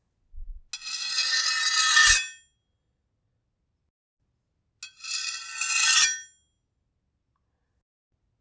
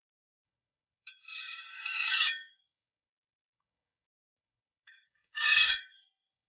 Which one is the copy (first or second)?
second